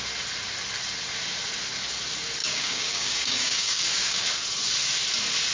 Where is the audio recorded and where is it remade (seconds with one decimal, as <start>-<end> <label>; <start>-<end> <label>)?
0.0-2.4 recorded; 2.4-4.3 remade; 4.3-5.5 recorded